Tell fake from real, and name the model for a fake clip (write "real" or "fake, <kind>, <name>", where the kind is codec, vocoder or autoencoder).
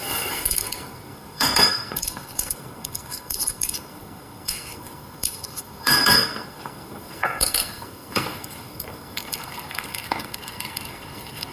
fake, codec, SNAC